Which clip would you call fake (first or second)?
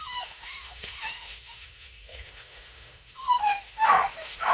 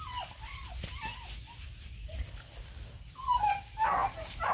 first